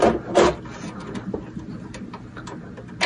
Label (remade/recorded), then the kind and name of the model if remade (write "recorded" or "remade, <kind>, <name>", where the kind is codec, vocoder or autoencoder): recorded